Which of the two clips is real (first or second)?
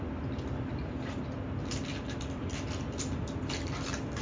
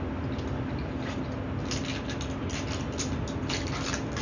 second